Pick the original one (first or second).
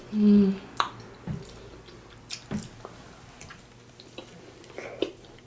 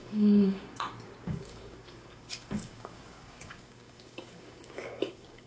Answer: first